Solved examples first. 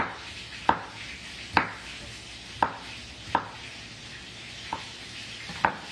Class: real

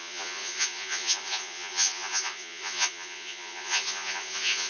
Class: fake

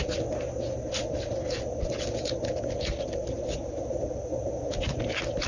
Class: real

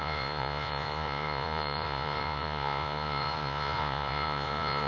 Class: fake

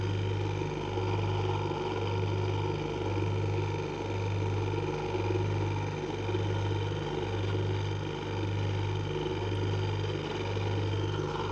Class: real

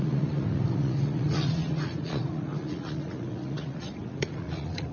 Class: fake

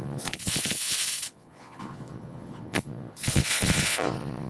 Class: fake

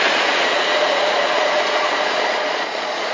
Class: fake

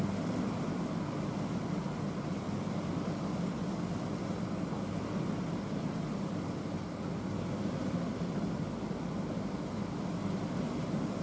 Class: real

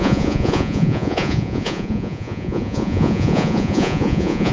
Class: fake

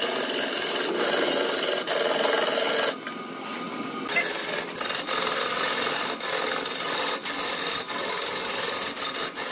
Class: real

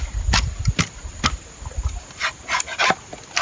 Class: real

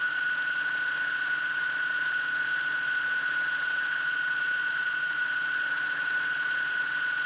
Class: fake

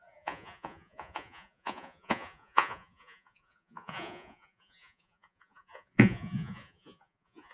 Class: fake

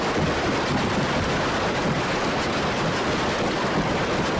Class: real